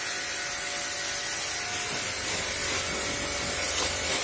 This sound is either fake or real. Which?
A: real